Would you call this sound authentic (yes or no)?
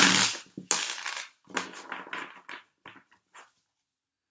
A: yes